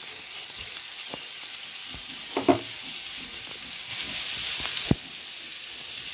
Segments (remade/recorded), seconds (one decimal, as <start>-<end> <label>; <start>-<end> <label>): 0.0-6.1 recorded

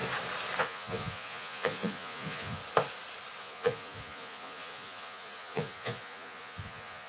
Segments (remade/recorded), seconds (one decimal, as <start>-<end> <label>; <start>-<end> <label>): 0.0-0.6 recorded; 0.6-2.6 remade; 2.6-3.4 recorded; 3.4-7.1 remade

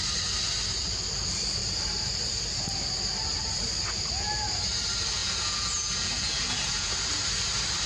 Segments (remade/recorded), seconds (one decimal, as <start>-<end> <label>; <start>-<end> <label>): 0.0-5.2 recorded; 5.2-6.9 remade; 6.9-7.9 recorded

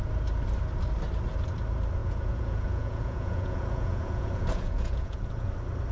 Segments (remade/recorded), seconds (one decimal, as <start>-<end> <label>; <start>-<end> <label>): 0.0-2.0 recorded; 2.0-5.5 remade; 5.5-5.9 recorded

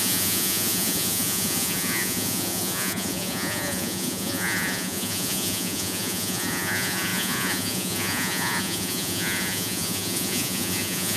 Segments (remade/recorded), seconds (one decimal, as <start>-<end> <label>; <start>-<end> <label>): 0.0-11.2 remade

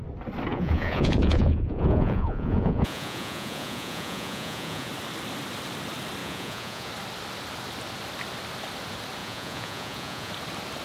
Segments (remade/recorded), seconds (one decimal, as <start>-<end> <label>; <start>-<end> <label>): 0.0-0.5 recorded; 0.5-4.9 remade; 4.9-6.2 recorded; 6.2-6.9 remade; 6.9-9.2 recorded; 9.2-10.3 remade; 10.3-10.8 recorded

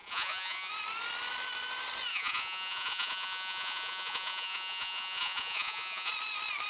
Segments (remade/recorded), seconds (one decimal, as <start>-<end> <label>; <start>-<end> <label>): 0.0-0.7 remade; 0.7-2.1 recorded; 2.1-6.1 remade; 6.1-6.7 recorded